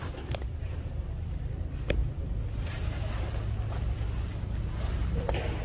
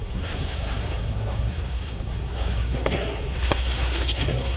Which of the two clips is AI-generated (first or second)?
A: second